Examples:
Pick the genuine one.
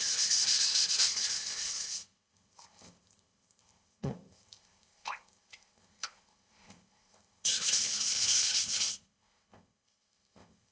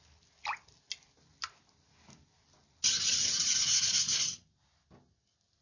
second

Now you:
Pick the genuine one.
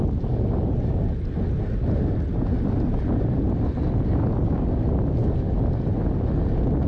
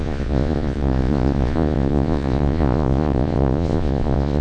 first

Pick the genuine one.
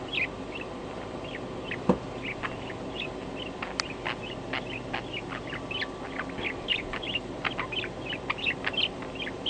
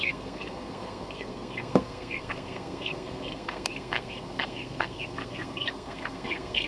first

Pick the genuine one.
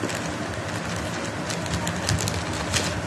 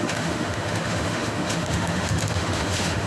first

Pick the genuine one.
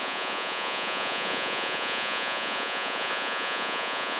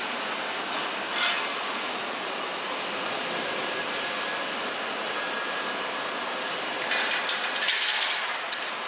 second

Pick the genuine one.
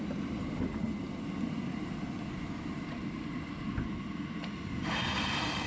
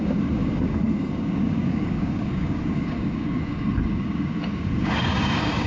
first